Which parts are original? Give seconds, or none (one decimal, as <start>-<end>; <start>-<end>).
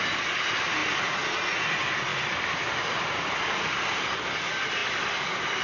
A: 0.0-2.1; 3.8-4.8